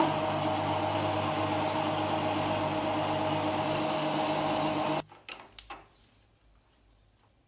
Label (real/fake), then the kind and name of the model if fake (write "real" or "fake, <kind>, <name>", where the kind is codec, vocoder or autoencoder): real